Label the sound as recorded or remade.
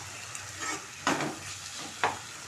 recorded